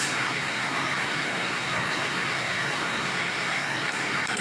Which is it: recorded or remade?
remade